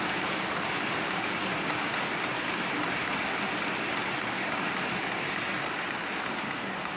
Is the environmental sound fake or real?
real